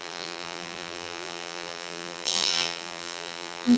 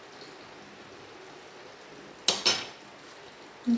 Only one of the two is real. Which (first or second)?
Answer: second